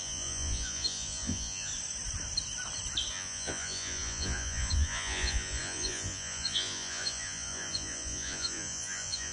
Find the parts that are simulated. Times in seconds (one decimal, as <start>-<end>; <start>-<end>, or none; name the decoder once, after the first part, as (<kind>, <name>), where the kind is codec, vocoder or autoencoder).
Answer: 0.0-1.7 (vocoder, Vocos); 3.1-9.3